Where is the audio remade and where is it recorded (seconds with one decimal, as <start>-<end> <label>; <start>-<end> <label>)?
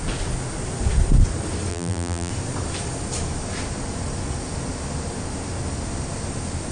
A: 0.0-1.7 recorded; 1.7-2.3 remade; 2.3-6.7 recorded